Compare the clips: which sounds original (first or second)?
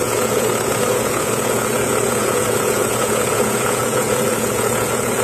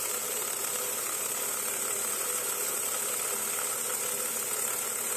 second